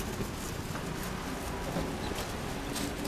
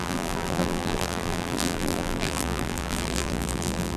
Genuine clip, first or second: first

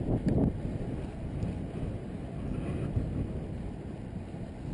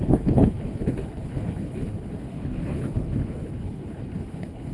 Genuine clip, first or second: first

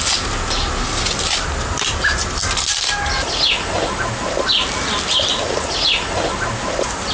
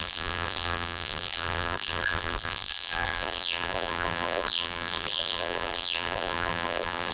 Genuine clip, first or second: first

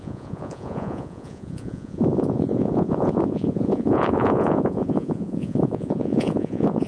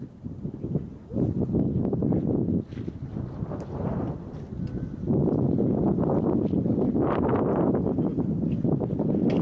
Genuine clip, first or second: second